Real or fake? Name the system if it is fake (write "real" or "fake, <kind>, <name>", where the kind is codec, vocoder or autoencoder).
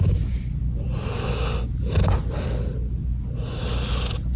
real